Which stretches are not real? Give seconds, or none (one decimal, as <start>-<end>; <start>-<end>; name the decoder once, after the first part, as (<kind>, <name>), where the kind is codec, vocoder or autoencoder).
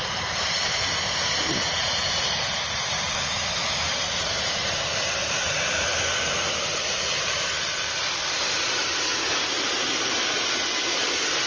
0.0-5.9 (vocoder, BigVGAN v2); 8.6-9.1